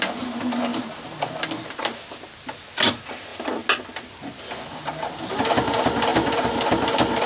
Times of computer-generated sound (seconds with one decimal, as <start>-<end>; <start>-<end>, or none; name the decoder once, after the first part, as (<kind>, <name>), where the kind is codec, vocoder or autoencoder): none

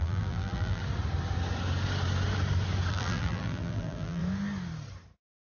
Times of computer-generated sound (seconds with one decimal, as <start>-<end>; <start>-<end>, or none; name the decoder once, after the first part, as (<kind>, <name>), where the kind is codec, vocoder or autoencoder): 0.0-0.8 (vocoder, BigVGAN v2); 2.9-4.2

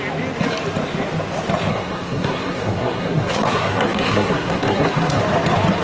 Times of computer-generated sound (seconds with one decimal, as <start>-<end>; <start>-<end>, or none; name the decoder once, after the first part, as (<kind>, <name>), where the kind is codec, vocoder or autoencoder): 1.7-5.2 (codec, SNAC)

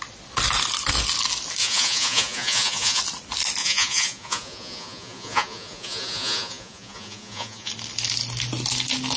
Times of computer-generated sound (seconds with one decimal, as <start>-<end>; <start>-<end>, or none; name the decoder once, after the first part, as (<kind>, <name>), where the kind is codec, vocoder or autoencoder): 1.6-3.0 (vocoder, Vocos); 3.6-7.7

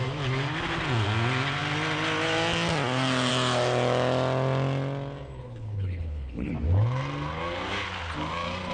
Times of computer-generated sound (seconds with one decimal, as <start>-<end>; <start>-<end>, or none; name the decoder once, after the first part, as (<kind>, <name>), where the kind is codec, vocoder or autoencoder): 5.4-6.5 (codec, HILCodec)

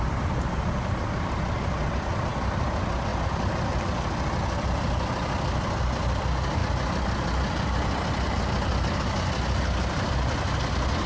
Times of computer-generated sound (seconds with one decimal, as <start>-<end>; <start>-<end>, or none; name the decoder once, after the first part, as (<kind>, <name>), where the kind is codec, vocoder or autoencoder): none

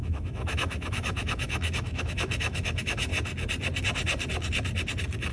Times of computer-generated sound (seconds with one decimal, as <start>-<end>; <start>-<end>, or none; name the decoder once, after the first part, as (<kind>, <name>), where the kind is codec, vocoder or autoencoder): 0.0-3.1 (autoencoder, DAC-VAE)